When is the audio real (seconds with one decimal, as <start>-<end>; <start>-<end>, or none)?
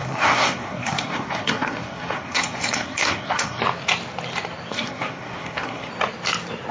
3.6-4.7; 5.9-6.7